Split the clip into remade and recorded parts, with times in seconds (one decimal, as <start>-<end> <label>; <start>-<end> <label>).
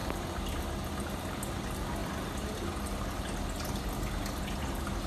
0.0-5.1 recorded